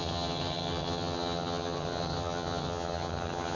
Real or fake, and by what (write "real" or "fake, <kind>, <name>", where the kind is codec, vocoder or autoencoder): fake, vocoder, HiFi-GAN